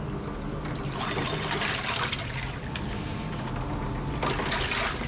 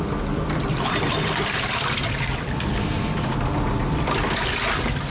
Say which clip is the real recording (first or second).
first